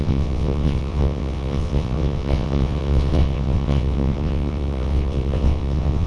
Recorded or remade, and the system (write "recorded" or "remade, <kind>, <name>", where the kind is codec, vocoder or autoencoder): remade, vocoder, WaveNeXt